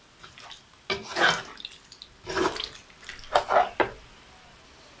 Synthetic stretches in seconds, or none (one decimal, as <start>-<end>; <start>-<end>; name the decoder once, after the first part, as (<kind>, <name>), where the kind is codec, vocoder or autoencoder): none